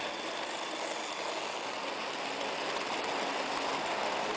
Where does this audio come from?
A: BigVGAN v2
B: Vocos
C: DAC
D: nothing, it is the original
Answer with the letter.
D